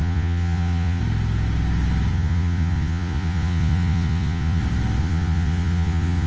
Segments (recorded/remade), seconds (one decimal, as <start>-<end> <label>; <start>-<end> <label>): 0.0-1.0 remade; 1.0-2.1 recorded; 2.1-4.6 remade; 4.6-5.0 recorded; 5.0-6.3 remade